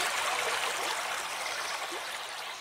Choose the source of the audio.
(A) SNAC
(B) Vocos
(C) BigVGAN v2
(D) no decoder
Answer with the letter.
D